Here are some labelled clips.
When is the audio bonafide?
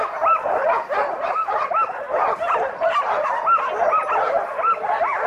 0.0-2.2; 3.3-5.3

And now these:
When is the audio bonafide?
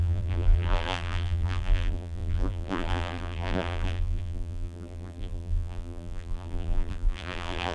none